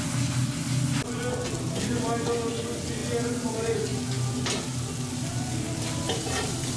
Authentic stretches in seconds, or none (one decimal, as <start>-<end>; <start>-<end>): 0.0-6.8